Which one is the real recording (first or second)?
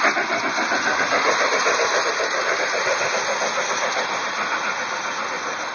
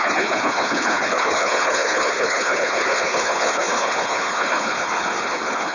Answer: first